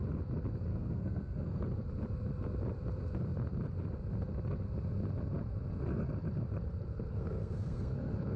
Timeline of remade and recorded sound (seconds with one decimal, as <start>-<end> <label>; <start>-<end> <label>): 0.0-0.7 recorded; 0.7-1.6 remade; 1.6-7.1 recorded; 7.1-8.4 remade